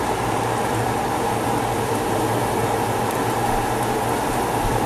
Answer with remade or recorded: recorded